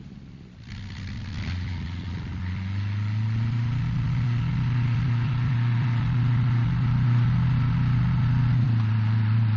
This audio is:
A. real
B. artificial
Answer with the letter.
A